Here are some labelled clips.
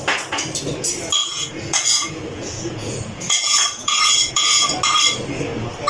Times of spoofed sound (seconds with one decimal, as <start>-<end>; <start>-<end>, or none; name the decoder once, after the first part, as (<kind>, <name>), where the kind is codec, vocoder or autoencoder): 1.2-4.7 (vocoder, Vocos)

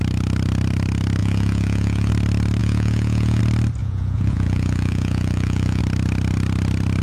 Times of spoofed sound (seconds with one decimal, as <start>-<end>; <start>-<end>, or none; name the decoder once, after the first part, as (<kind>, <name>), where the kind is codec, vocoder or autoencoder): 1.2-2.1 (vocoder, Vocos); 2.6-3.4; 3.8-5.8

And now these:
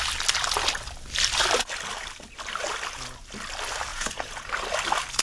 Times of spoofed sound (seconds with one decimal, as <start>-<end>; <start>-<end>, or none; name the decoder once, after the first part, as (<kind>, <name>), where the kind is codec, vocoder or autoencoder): 3.9-4.5 (vocoder, Vocos)

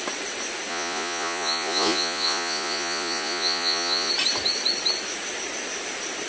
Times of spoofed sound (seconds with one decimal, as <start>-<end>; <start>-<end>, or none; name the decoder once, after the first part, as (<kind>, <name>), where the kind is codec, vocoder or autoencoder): 0.7-4.1 (vocoder, Vocos)

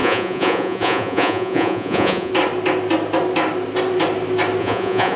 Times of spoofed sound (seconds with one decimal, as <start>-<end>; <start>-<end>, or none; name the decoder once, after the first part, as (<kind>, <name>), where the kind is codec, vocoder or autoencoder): 0.0-2.3 (vocoder, Vocos); 4.6-5.2

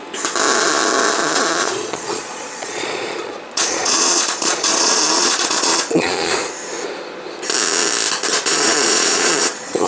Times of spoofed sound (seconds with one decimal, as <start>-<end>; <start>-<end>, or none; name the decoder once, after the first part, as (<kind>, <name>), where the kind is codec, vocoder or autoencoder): 1.2-6.3 (vocoder, Vocos); 8.3-9.9

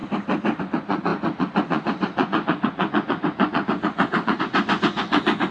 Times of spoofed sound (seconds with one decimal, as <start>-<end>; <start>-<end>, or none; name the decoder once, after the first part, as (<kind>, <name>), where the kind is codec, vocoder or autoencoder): 0.6-5.5 (vocoder, Vocos)